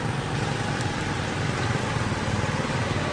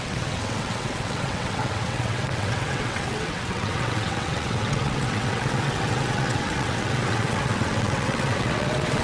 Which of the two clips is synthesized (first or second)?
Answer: second